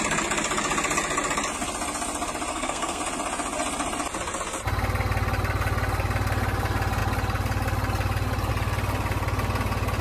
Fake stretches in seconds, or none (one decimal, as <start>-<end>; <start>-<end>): 2.5-3.0

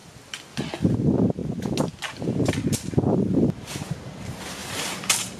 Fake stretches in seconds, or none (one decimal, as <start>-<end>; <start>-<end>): 4.6-5.4